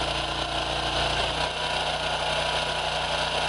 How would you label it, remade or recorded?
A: recorded